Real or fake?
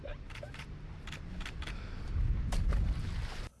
fake